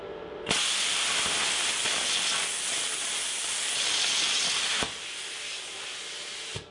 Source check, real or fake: real